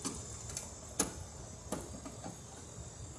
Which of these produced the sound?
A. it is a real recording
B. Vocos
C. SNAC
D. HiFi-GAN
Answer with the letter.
A